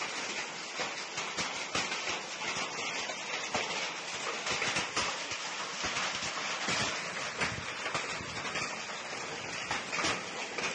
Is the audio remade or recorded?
recorded